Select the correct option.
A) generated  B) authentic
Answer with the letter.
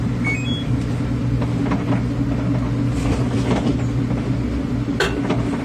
B